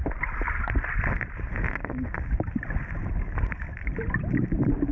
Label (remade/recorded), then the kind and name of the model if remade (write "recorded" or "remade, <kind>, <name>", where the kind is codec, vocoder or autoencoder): recorded